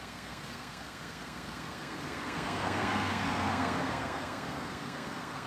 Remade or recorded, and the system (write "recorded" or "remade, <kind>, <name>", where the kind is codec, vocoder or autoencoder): remade, codec, SNAC